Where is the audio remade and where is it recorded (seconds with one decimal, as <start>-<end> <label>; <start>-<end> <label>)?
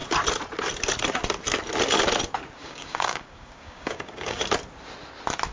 0.0-2.6 recorded; 2.6-4.4 remade; 4.4-5.5 recorded